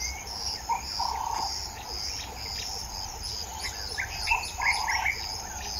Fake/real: real